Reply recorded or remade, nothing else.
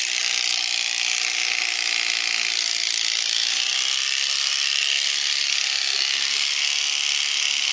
recorded